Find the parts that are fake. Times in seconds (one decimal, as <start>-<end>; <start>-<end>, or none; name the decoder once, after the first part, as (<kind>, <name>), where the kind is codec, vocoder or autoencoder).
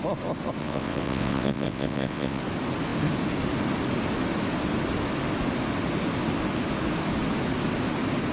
0.6-2.4 (vocoder, WaveNeXt)